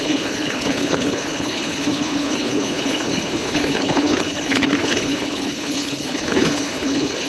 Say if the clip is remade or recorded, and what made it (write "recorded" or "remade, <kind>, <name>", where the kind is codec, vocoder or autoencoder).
remade, codec, HILCodec